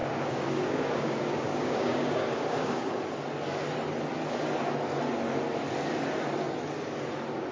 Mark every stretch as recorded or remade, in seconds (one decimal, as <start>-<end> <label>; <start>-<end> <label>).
0.0-3.0 remade; 3.0-7.5 recorded